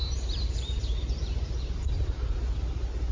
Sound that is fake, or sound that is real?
fake